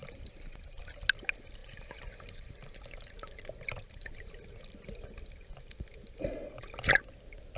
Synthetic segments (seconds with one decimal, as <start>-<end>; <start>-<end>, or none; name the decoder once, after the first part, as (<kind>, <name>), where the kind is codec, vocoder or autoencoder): 0.0-0.8 (vocoder, BigVGAN v2); 1.6-4.3